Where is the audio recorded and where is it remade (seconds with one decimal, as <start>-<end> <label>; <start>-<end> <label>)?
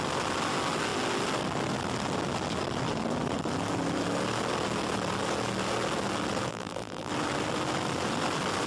0.0-6.5 recorded; 6.5-7.1 remade; 7.1-8.7 recorded